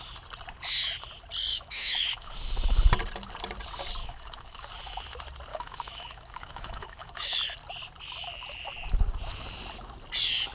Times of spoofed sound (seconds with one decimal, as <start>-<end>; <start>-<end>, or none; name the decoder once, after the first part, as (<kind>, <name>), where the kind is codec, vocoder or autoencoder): 1.5-2.3 (autoencoder, DAC-VAE); 4.0-4.7; 5.5-7.4